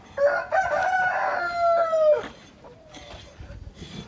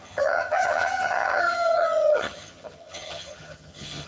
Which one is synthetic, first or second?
second